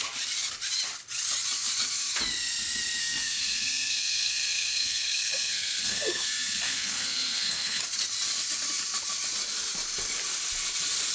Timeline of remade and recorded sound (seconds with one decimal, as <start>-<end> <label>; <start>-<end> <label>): 0.0-3.0 recorded; 3.0-7.8 remade; 7.8-11.1 recorded